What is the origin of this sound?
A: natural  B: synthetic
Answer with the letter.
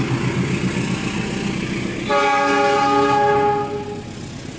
A